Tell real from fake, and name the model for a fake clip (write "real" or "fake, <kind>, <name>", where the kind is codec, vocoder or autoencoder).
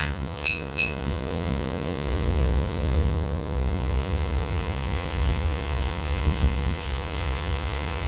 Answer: fake, vocoder, Vocos